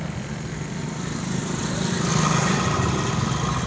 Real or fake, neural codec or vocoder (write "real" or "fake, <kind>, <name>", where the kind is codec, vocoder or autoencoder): real